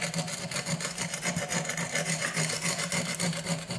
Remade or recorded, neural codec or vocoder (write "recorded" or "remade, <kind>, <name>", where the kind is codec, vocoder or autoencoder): recorded